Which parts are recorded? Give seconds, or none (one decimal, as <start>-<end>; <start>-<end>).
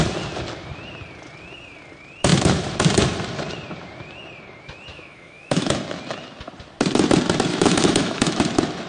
0.0-4.9; 5.8-7.5; 8.4-8.9